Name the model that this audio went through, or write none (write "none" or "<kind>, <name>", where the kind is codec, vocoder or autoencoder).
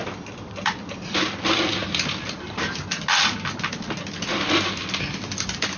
none